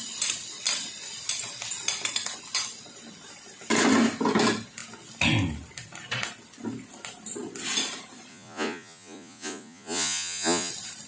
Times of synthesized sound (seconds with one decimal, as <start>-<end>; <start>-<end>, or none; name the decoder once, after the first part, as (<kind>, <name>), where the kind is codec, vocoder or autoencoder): 8.3-10.7 (vocoder, Vocos)